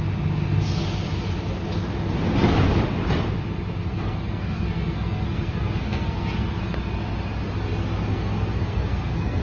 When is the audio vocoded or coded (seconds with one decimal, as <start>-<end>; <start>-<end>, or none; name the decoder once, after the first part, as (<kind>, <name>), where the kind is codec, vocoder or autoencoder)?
3.9-6.6 (codec, SNAC); 8.1-9.4

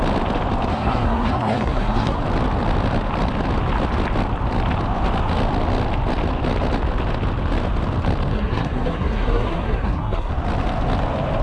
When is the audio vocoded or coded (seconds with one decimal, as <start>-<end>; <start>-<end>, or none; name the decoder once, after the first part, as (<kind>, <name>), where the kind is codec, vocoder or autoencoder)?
0.7-2.2 (codec, SNAC); 8.3-10.3

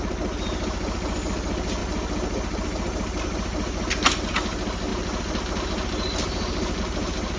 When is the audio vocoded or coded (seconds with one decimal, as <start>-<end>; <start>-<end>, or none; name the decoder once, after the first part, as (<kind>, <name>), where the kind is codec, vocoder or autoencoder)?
none

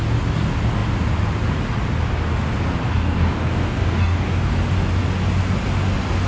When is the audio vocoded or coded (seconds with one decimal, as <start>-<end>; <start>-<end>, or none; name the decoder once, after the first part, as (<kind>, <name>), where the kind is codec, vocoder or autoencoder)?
2.9-4.5 (codec, DAC)

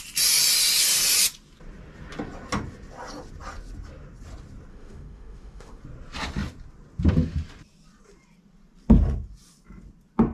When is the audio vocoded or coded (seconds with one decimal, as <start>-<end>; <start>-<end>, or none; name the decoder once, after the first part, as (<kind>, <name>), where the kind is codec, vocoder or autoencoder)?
4.7-5.8 (autoencoder, DAC-VAE)